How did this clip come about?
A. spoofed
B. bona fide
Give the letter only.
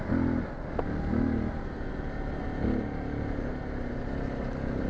B